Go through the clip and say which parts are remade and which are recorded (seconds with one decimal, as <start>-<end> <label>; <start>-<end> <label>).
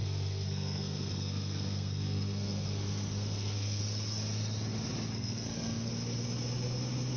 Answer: 0.0-3.8 remade; 3.8-5.1 recorded; 5.1-5.9 remade; 5.9-7.2 recorded